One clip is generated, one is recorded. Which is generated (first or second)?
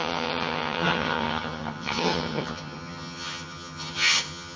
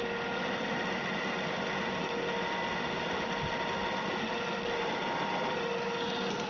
first